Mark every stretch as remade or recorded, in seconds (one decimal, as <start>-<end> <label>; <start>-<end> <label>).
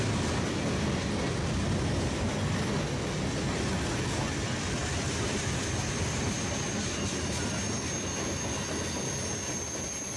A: 0.0-10.2 recorded